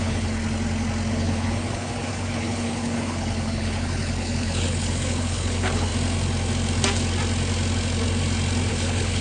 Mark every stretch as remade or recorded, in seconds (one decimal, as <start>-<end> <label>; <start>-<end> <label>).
0.0-0.4 remade; 0.4-1.1 recorded; 1.1-5.9 remade; 5.9-8.7 recorded; 8.7-9.2 remade